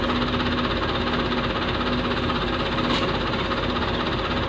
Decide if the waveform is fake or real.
real